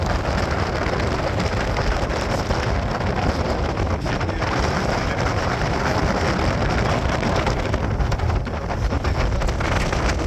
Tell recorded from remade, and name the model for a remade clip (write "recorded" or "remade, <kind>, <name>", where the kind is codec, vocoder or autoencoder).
recorded